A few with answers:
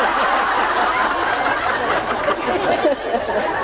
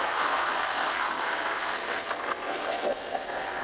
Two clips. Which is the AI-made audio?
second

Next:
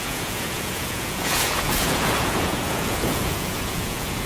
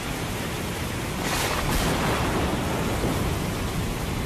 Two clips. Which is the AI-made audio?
first